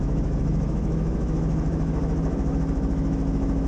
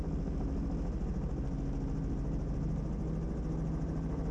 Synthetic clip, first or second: first